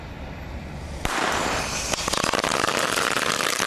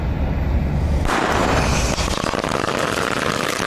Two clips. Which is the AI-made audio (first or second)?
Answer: first